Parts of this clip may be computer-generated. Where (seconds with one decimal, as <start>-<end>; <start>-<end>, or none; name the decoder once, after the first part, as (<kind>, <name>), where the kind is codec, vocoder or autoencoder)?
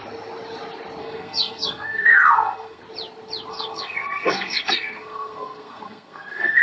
1.0-2.8 (codec, SNAC); 3.5-6.6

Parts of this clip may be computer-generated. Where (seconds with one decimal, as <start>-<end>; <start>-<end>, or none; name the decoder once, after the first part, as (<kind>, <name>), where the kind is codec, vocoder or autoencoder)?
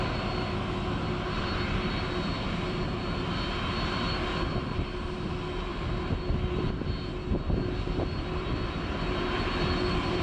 none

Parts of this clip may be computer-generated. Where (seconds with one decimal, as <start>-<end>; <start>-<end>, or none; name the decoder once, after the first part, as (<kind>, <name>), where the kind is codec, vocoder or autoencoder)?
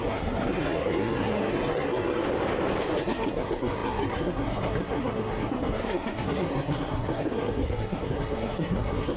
0.0-2.2 (codec, SNAC); 3.0-9.2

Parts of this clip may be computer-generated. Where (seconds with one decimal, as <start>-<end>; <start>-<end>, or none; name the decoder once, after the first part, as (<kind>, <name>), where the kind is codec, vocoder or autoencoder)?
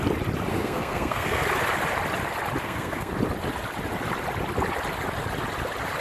0.5-1.4 (codec, SNAC); 2.6-3.1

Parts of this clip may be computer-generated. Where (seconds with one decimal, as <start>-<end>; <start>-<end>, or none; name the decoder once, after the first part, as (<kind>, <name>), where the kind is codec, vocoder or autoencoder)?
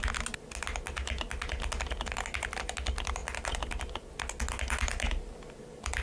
none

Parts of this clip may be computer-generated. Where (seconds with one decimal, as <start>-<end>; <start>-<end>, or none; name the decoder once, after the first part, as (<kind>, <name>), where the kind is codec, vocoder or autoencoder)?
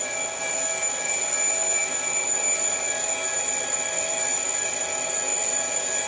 none